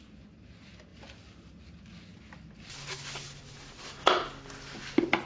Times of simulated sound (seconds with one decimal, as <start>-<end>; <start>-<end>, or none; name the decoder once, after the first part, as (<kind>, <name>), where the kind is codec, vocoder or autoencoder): none